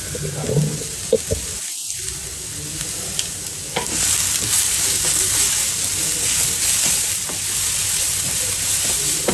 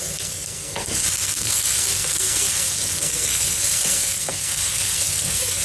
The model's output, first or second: second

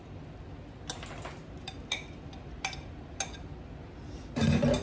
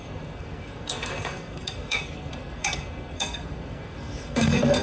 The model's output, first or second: second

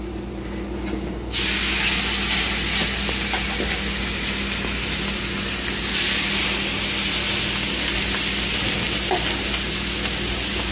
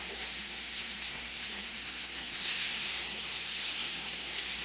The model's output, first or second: second